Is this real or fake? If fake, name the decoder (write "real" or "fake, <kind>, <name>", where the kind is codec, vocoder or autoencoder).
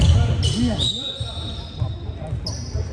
real